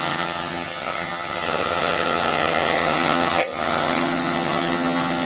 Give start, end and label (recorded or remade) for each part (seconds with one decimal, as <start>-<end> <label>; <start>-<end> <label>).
0.0-5.3 remade